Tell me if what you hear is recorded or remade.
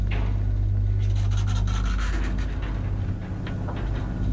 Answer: recorded